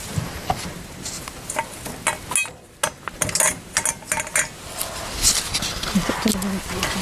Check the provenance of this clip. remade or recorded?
recorded